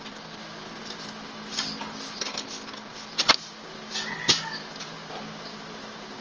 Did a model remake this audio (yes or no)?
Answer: no